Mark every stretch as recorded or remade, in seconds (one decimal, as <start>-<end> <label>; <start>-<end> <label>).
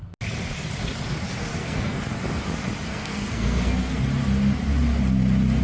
0.0-1.5 recorded; 1.5-2.0 remade; 2.0-2.9 recorded; 2.9-4.0 remade; 4.0-5.6 recorded